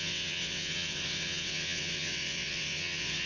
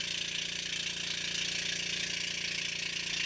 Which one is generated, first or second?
first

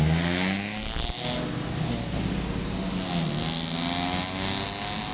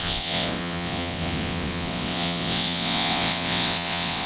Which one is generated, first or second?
second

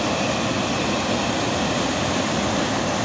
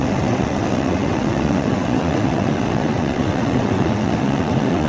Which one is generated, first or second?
second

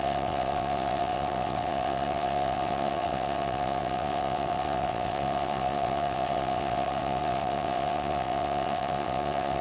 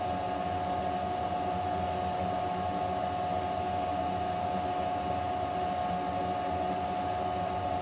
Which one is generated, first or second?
first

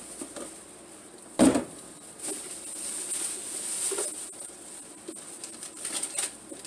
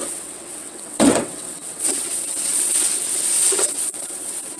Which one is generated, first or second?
second